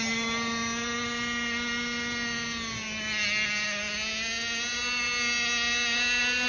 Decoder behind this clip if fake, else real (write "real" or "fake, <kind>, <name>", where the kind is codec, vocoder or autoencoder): real